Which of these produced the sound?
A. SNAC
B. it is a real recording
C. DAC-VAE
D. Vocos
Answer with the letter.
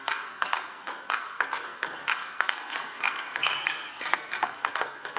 A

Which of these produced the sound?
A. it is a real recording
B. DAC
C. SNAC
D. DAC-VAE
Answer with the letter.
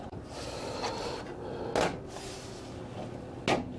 A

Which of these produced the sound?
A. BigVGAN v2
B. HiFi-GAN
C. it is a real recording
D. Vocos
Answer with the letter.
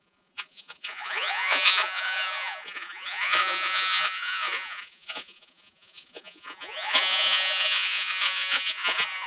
D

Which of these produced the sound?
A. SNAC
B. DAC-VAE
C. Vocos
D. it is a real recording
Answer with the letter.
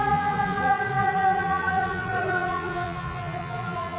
C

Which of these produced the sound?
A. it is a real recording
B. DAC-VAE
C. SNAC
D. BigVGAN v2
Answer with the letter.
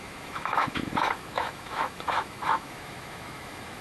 B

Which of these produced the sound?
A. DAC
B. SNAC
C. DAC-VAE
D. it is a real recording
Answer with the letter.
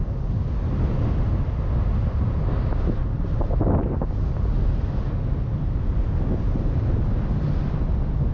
D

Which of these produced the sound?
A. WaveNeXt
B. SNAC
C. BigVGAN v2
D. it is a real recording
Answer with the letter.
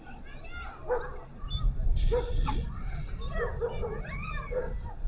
D